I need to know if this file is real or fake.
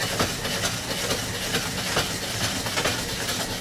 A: real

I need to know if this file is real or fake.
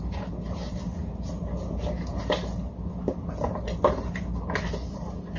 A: real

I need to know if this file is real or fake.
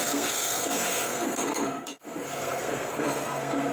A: fake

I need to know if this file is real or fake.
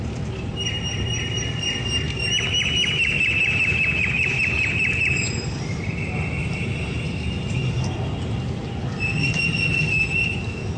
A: real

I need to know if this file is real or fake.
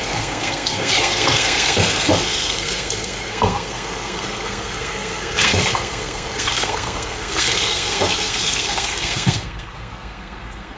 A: fake